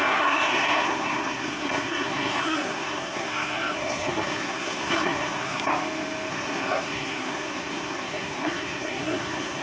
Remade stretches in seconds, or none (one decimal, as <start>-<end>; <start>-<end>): 0.0-5.7; 6.3-9.6